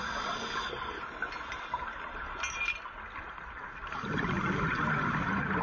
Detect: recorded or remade recorded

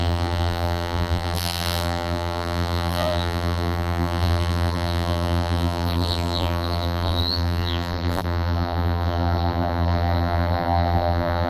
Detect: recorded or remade remade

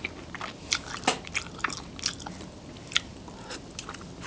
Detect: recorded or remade recorded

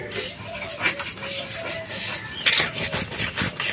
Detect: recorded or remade recorded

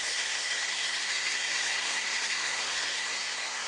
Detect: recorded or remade remade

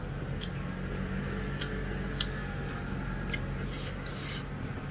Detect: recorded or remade recorded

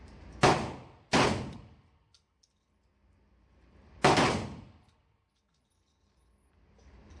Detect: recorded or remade recorded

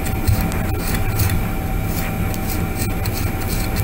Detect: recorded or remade recorded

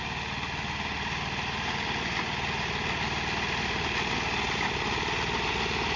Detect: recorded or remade recorded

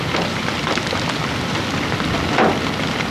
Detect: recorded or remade recorded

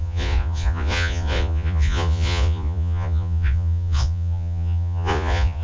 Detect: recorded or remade remade